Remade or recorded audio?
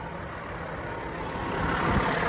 recorded